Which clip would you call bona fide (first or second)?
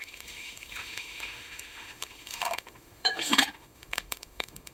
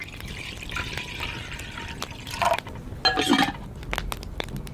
second